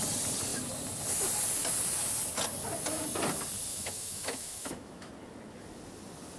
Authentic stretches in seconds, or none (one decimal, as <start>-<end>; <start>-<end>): 0.0-3.7; 5.1-6.4